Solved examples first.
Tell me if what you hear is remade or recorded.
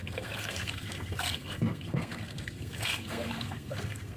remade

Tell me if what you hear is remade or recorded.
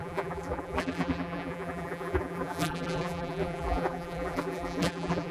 remade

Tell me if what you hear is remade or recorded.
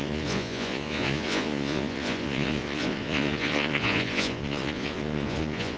remade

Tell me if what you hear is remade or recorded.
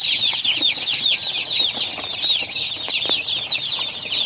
recorded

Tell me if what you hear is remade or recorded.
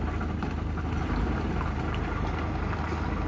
recorded